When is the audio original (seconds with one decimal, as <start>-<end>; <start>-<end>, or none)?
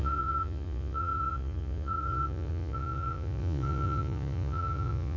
none